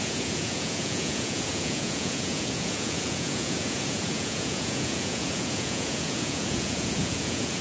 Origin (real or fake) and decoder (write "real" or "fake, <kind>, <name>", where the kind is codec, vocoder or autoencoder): fake, vocoder, Vocos